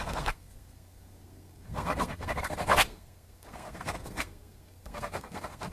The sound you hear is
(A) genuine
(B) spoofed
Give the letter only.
B